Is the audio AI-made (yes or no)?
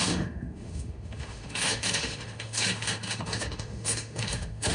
yes